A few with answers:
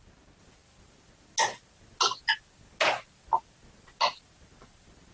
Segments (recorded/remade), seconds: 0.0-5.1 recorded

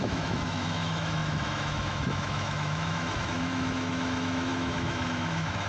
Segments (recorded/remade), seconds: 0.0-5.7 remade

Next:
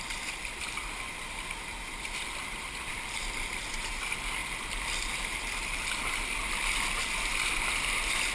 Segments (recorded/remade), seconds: 0.0-2.9 remade; 2.9-3.7 recorded; 3.7-4.4 remade; 4.4-6.5 recorded; 6.5-8.3 remade

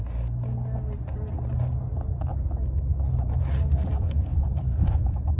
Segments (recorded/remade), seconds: 0.0-4.3 recorded; 4.3-5.4 remade